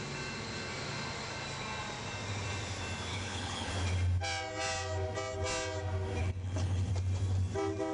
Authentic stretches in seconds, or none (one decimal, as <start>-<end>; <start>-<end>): 0.0-3.1; 3.7-6.2; 6.9-7.9